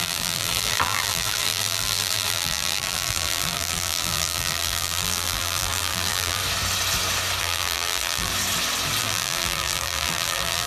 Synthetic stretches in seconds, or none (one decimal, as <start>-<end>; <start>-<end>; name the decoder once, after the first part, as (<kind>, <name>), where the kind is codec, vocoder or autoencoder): 0.0-6.4 (vocoder, BigVGAN v2); 7.4-8.3; 9.0-10.7